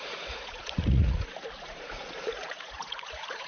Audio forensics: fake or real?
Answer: fake